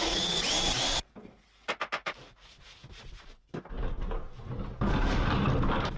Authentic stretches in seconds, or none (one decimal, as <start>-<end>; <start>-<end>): 1.1-2.0; 3.1-6.0